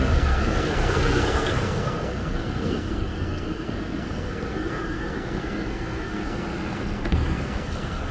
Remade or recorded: remade